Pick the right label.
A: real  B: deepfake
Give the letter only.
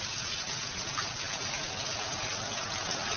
A